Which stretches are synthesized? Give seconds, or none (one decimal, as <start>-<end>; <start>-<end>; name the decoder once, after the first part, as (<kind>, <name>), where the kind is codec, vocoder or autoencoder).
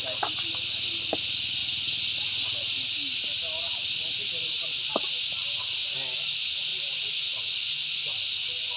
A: none